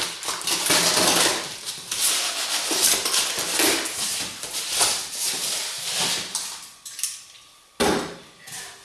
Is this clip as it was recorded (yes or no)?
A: yes